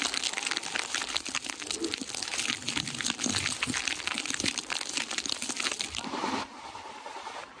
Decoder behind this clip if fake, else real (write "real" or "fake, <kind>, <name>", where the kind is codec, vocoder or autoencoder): real